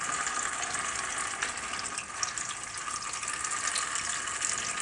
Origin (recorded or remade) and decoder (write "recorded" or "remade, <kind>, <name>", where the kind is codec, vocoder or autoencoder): recorded